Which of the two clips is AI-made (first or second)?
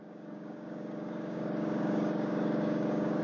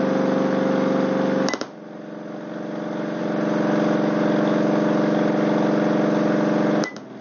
first